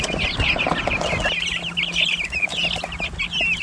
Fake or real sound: real